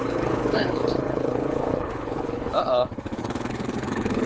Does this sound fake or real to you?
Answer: fake